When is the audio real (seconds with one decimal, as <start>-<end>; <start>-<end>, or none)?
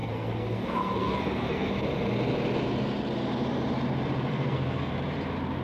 1.7-4.3; 4.9-5.6